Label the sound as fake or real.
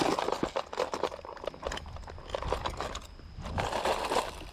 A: real